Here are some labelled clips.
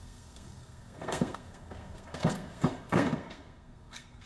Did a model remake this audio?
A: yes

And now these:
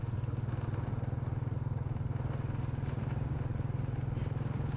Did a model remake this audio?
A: no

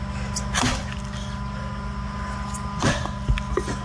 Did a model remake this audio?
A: no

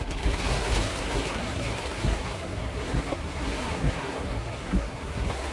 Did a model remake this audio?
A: yes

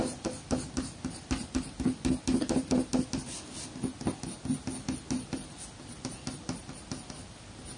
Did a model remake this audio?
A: no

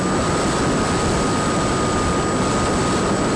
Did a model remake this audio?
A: no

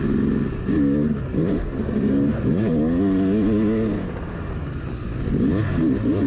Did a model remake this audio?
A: no